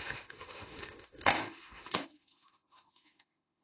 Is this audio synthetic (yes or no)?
yes